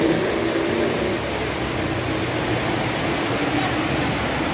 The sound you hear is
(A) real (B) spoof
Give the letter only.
A